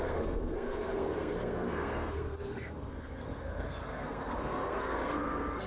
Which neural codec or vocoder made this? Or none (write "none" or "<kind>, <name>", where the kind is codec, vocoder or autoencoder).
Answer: codec, SNAC